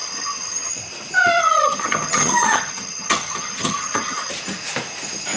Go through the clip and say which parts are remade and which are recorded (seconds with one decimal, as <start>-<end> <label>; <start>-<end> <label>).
0.0-0.7 remade; 0.7-1.4 recorded; 1.4-4.3 remade; 4.3-5.4 recorded